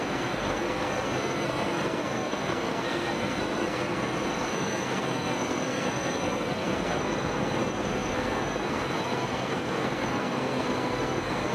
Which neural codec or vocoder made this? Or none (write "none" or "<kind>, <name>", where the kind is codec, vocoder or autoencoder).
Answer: codec, SNAC